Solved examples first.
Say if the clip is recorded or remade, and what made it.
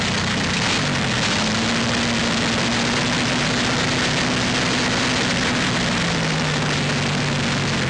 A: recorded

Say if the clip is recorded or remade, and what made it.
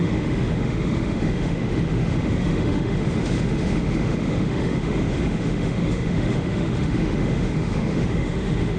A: remade, autoencoder, DAC-VAE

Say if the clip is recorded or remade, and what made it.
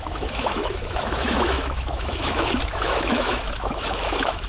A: remade, autoencoder, DAC-VAE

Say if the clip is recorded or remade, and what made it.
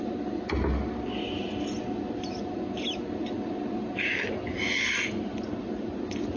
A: recorded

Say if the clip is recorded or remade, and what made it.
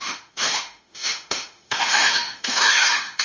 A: remade, autoencoder, DAC-VAE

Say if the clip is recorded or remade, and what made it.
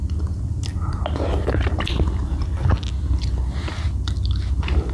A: recorded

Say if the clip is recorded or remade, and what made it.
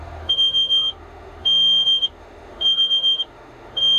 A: remade, autoencoder, DAC-VAE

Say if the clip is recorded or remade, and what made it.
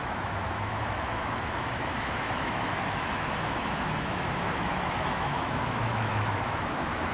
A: remade, autoencoder, DAC-VAE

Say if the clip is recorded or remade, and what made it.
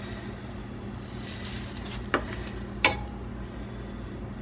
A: recorded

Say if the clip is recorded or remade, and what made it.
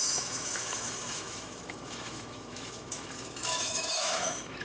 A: remade, autoencoder, DAC-VAE